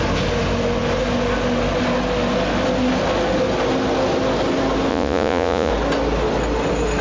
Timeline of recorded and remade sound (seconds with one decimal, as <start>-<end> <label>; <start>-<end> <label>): 0.0-4.9 recorded; 4.9-5.7 remade; 5.7-7.0 recorded